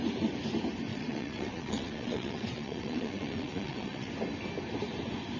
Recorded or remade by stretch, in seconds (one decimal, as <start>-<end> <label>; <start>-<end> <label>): 0.0-0.9 recorded; 0.9-4.1 remade; 4.1-5.4 recorded

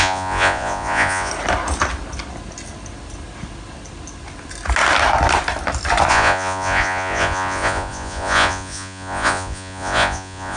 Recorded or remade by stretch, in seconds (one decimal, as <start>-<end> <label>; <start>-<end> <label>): 0.0-1.3 remade; 1.3-6.1 recorded; 6.1-10.6 remade

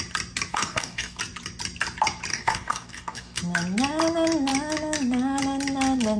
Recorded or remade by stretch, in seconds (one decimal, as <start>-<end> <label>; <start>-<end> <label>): 0.0-0.5 recorded; 0.5-1.2 remade; 1.2-2.3 recorded; 2.3-3.4 remade; 3.4-6.2 recorded

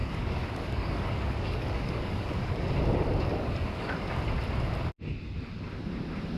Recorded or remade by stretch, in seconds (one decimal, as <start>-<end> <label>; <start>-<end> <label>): 0.0-2.7 remade; 2.7-3.3 recorded; 3.3-4.2 remade; 4.2-6.4 recorded

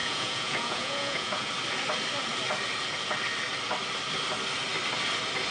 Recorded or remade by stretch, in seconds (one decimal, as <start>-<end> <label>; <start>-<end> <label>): 0.0-1.5 remade; 1.5-5.5 recorded

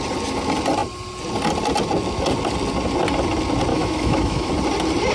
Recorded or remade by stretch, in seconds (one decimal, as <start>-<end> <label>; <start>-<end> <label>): 0.0-3.7 recorded; 3.7-4.5 remade; 4.5-5.1 recorded

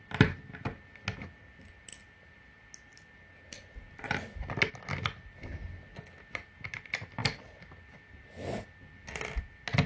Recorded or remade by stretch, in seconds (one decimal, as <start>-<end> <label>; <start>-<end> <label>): 0.0-9.9 recorded

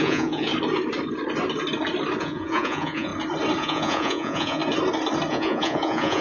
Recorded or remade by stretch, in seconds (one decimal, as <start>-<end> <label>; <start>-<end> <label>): 0.0-0.5 remade; 0.5-2.2 recorded; 2.2-3.1 remade; 3.1-3.6 recorded; 3.6-4.6 remade; 4.6-5.3 recorded; 5.3-6.2 remade